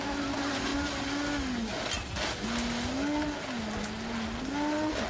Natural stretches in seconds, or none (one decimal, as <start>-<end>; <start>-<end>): 0.0-5.1